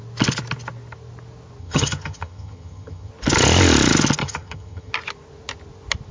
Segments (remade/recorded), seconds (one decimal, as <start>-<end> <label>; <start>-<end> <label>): 0.0-1.6 recorded; 1.6-3.1 remade; 3.1-4.2 recorded; 4.2-4.9 remade; 4.9-6.1 recorded